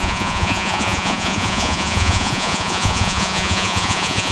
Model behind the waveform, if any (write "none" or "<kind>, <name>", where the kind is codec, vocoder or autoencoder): vocoder, Vocos